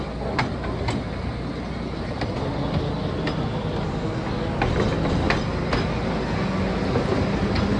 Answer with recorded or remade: recorded